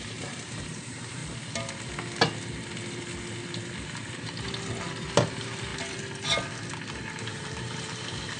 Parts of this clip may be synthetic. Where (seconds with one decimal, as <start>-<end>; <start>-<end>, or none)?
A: 0.0-1.2; 5.3-5.7; 7.2-8.4